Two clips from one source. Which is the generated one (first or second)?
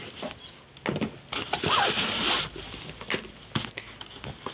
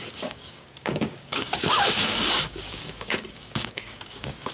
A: second